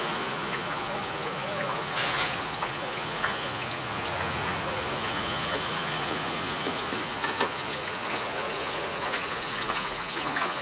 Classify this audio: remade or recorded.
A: remade